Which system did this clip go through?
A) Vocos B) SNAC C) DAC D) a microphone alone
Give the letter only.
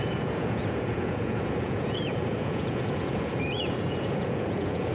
A